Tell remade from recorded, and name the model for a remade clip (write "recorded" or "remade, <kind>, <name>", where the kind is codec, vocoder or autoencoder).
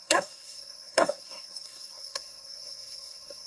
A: remade, codec, SNAC